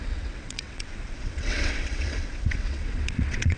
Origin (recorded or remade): remade